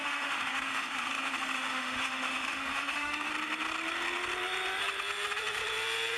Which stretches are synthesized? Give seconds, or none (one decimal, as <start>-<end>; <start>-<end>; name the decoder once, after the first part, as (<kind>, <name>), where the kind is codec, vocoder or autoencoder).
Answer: 0.0-3.3 (autoencoder, DAC-VAE)